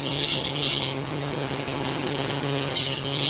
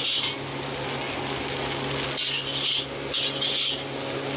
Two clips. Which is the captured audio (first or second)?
second